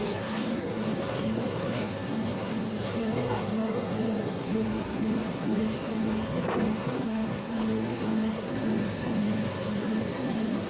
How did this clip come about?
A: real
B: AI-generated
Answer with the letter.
B